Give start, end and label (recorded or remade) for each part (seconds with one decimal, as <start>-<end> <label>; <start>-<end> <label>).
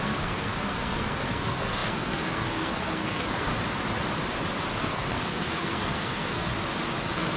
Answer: 0.0-3.5 remade; 3.5-4.8 recorded; 4.8-6.5 remade; 6.5-7.0 recorded; 7.0-7.4 remade